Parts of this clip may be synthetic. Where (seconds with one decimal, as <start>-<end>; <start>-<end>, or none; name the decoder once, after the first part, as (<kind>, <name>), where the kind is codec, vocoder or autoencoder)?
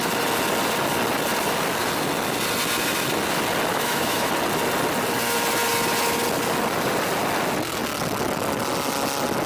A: 3.7-4.3 (autoencoder, DAC-VAE)